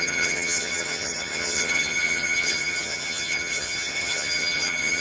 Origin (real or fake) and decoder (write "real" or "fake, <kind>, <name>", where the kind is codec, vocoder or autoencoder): fake, vocoder, HiFi-GAN